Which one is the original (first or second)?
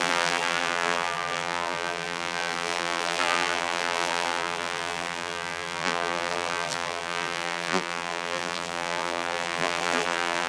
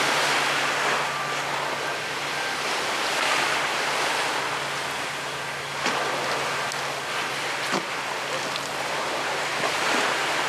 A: second